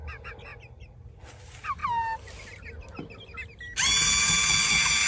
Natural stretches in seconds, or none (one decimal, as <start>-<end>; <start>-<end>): 0.0-5.1